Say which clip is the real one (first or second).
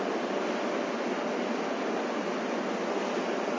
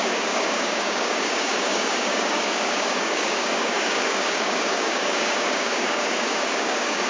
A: first